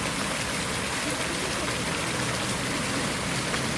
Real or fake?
real